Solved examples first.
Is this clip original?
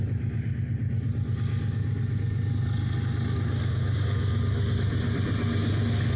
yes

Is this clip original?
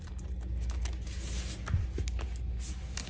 yes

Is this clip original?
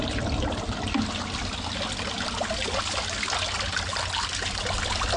yes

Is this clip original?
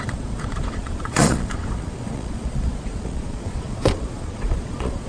no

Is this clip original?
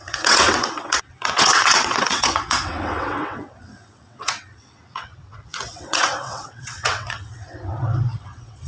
no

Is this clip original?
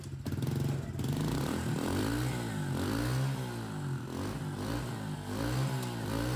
yes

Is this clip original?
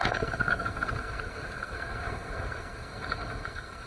no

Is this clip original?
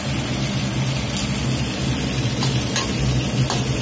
yes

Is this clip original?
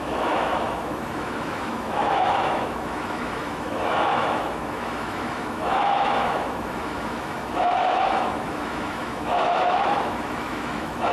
no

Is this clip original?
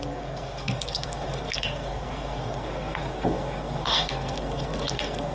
no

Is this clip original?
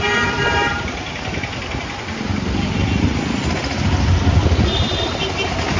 yes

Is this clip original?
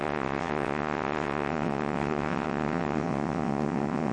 no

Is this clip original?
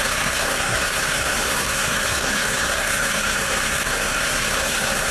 no